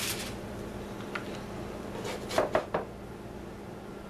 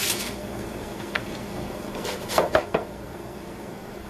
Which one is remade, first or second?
second